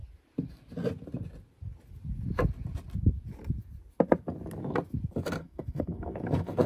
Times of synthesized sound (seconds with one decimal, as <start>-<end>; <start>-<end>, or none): 5.4-6.7